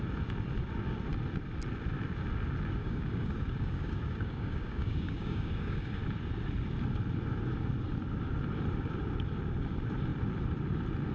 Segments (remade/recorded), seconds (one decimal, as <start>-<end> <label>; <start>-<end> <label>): 0.0-2.8 recorded; 2.8-6.0 remade; 6.0-11.1 recorded